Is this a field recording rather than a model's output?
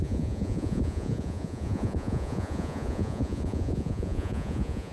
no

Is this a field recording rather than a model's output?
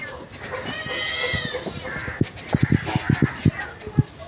yes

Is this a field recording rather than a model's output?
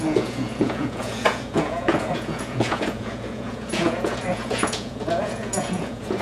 no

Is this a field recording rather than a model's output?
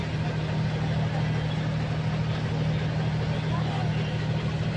yes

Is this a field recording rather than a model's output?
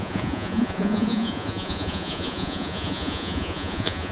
no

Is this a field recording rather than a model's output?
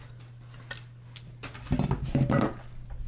yes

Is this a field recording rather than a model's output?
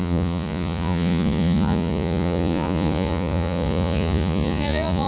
no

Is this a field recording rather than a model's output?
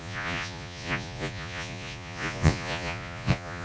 no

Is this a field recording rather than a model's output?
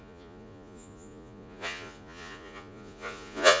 no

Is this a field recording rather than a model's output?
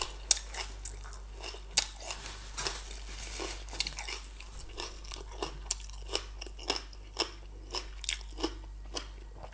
yes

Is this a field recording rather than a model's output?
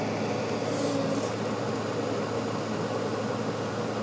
yes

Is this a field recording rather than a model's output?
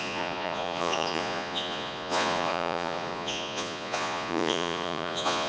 no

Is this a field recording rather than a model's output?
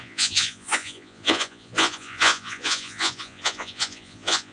no